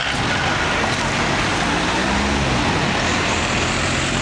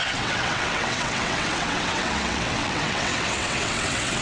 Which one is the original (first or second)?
first